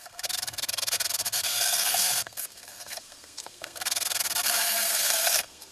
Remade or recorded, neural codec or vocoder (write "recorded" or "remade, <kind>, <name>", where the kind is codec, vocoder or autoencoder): remade, codec, SNAC